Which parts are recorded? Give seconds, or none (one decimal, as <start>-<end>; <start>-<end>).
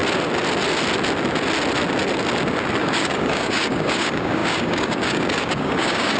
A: 0.0-2.8